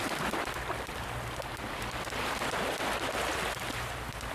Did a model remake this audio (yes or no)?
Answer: no